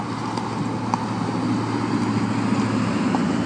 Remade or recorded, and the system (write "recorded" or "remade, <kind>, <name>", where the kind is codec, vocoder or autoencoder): recorded